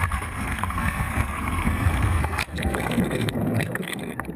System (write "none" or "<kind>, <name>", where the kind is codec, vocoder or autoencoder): codec, SNAC